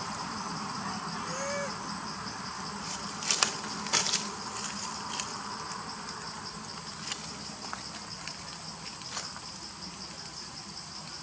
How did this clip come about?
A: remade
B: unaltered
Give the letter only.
B